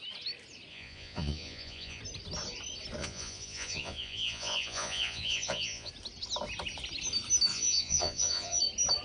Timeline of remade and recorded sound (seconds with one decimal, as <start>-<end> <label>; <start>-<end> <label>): 0.0-0.7 recorded; 0.7-2.0 remade; 2.0-3.0 recorded; 3.0-5.9 remade; 5.9-7.5 recorded; 7.5-8.6 remade; 8.6-9.0 recorded